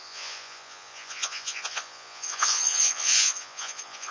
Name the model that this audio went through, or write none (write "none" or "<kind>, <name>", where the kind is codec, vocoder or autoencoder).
vocoder, Vocos